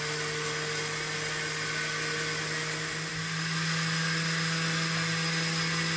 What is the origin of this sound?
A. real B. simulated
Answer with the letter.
A